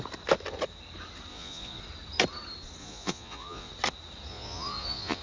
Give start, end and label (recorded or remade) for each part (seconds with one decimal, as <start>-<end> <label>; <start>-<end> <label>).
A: 0.0-1.3 recorded; 1.3-1.8 remade; 1.8-2.8 recorded; 2.8-3.7 remade; 3.7-4.3 recorded; 4.3-5.2 remade

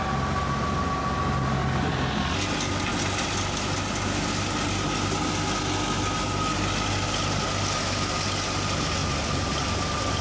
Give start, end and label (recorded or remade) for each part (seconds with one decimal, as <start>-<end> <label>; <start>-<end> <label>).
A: 0.0-9.0 recorded; 9.0-10.2 remade

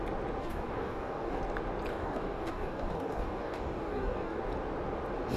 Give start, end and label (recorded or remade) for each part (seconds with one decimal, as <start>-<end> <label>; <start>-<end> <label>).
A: 0.0-0.4 recorded; 0.4-1.4 remade; 1.4-1.9 recorded; 1.9-4.4 remade; 4.4-5.4 recorded

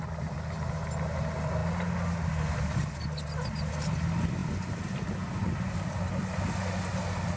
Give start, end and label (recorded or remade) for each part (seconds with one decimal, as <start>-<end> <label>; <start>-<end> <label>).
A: 0.0-7.4 recorded

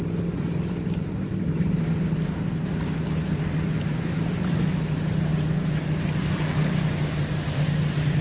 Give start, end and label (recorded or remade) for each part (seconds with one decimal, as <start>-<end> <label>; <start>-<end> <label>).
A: 0.0-3.9 recorded; 3.9-4.6 remade; 4.6-8.2 recorded